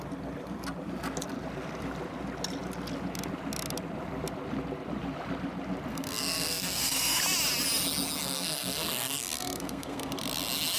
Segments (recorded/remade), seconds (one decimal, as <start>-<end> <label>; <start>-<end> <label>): 0.0-5.9 recorded; 5.9-7.2 remade; 7.2-8.2 recorded; 8.2-10.1 remade; 10.1-10.8 recorded